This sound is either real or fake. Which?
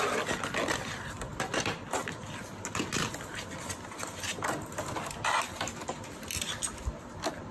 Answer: real